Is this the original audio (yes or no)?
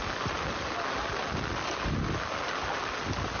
yes